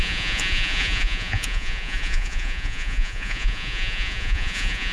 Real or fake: fake